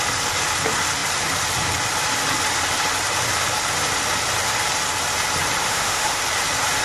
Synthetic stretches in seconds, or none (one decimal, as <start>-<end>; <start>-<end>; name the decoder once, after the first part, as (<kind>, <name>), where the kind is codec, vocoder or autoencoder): 5.6-6.2 (autoencoder, DAC-VAE)